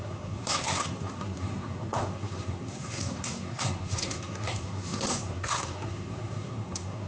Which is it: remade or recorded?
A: remade